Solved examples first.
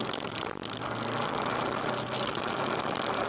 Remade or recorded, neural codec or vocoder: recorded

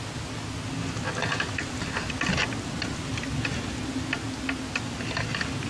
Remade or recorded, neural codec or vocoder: recorded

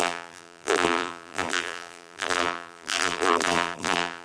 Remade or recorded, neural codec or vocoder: remade, vocoder, BigVGAN v2